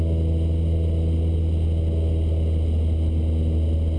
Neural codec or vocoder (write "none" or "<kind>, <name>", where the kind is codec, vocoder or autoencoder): none